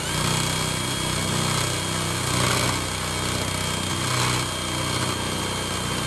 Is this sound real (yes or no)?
yes